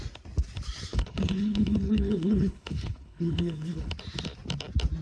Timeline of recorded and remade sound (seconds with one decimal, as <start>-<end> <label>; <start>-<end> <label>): 0.0-0.9 recorded; 0.9-3.9 remade; 3.9-5.0 recorded